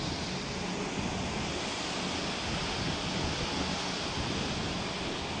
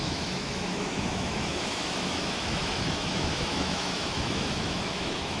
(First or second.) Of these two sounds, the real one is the first